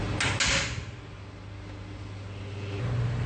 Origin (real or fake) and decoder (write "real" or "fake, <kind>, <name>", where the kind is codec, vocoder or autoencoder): real